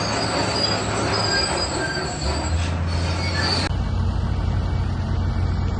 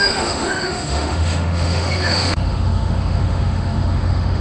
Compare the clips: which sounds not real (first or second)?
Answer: second